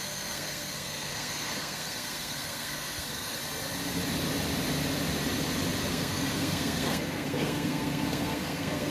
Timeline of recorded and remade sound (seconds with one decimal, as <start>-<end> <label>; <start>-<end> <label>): 0.0-3.4 remade; 3.4-5.9 recorded; 5.9-8.9 remade